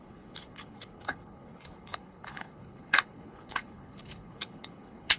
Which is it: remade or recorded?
remade